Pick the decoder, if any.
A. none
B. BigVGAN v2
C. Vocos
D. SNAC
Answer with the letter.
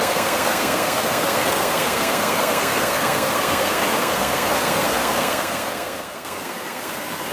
D